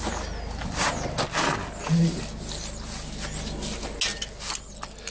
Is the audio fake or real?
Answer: real